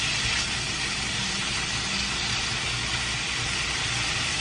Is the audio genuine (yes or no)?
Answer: yes